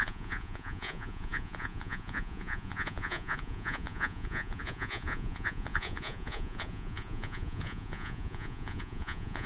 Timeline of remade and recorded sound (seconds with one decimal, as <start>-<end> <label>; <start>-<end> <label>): 0.0-9.5 remade